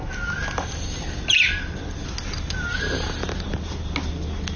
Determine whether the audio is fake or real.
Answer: real